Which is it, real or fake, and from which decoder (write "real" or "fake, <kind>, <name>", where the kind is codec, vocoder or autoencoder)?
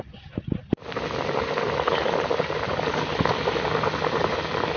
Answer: real